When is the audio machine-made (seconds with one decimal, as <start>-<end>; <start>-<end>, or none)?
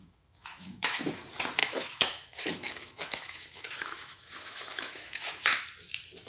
0.0-1.1; 1.6-5.4